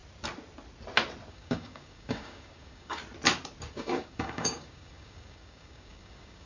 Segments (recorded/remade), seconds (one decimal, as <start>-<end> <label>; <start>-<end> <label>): 0.0-1.3 recorded; 1.3-3.0 remade; 3.0-3.7 recorded; 3.7-6.5 remade